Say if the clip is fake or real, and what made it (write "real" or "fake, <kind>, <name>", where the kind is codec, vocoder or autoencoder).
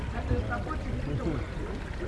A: real